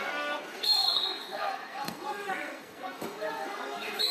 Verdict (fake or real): fake